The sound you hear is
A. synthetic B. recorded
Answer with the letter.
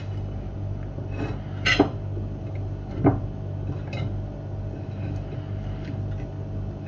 B